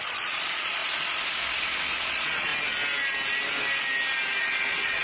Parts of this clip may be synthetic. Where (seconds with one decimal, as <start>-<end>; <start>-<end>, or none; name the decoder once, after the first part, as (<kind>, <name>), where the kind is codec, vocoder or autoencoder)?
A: 0.0-0.8 (vocoder, Vocos); 2.1-2.5; 4.4-5.0

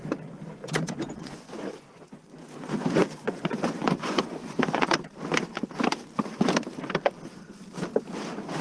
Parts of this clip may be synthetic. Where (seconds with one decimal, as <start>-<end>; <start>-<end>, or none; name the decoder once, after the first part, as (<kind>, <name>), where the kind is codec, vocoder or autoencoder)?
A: 0.6-5.0 (vocoder, Vocos)

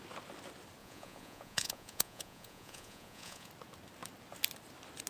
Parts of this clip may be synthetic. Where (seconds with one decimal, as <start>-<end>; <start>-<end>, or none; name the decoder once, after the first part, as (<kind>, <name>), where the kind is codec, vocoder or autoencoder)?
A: 0.8-3.5 (vocoder, Vocos)

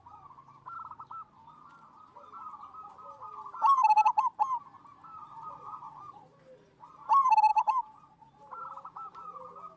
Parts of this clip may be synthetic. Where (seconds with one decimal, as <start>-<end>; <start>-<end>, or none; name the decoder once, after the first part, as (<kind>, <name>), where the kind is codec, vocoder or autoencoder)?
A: 5.2-6.0 (vocoder, Vocos)